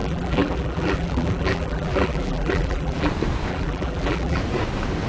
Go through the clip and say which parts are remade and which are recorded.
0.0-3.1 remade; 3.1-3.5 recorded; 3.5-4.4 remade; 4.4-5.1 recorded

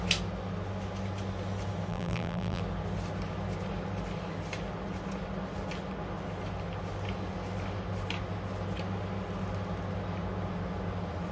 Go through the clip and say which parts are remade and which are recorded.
0.0-1.9 recorded; 1.9-2.6 remade; 2.6-11.3 recorded

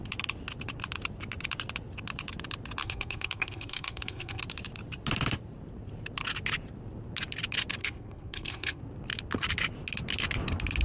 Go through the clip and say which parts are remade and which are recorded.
0.0-2.8 recorded; 2.8-4.4 remade; 4.4-7.8 recorded; 7.8-8.8 remade; 8.8-10.8 recorded

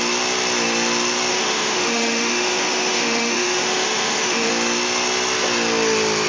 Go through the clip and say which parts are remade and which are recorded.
0.0-1.3 recorded; 1.3-4.5 remade; 4.5-6.3 recorded

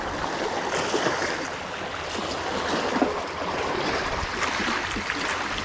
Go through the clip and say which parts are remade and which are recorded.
0.0-5.6 recorded

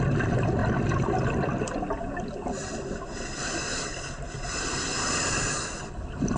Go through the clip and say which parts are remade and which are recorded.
0.0-6.4 recorded

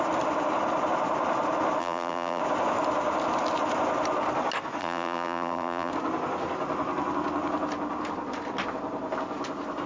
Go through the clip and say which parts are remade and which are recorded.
0.0-1.8 recorded; 1.8-2.4 remade; 2.4-4.8 recorded; 4.8-5.9 remade; 5.9-9.9 recorded

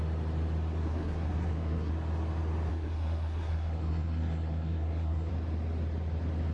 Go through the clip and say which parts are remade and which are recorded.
0.0-0.8 recorded; 0.8-1.9 remade; 1.9-2.7 recorded; 2.7-5.3 remade; 5.3-6.5 recorded